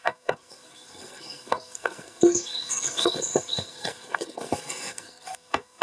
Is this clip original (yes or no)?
no